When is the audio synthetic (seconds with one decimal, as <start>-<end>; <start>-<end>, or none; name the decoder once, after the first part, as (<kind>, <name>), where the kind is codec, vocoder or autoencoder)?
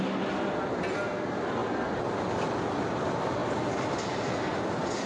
none